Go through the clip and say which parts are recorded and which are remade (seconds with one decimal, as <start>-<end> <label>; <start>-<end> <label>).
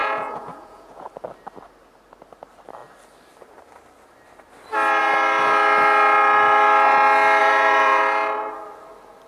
0.0-1.1 remade; 1.1-7.4 recorded; 7.4-8.0 remade; 8.0-9.3 recorded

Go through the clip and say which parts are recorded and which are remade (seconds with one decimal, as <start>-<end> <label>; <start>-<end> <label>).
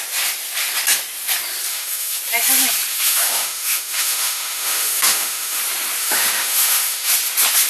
0.0-1.7 recorded; 1.7-2.2 remade; 2.2-2.9 recorded; 2.9-5.6 remade; 5.6-6.0 recorded; 6.0-7.1 remade; 7.1-7.7 recorded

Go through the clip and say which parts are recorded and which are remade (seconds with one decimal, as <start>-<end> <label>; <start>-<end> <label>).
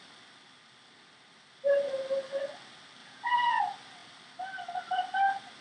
0.0-3.0 recorded; 3.0-3.6 remade; 3.6-5.6 recorded